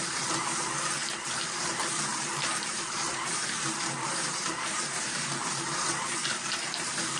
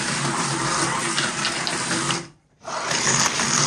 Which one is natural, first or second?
second